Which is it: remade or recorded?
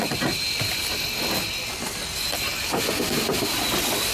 recorded